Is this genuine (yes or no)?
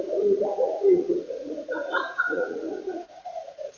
no